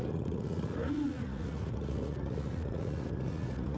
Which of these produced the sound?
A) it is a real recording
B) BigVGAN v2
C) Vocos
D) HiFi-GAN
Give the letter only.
C